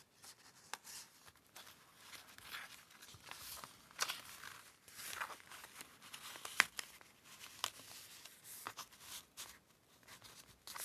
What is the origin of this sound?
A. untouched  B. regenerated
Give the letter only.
A